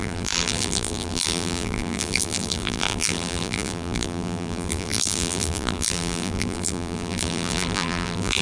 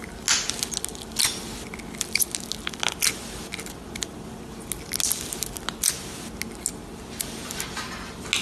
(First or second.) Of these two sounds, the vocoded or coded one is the first